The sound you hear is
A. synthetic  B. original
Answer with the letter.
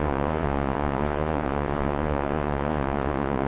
A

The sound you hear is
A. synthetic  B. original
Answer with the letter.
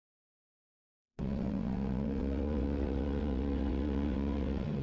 A